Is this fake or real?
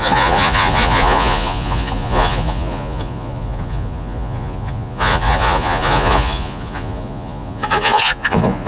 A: fake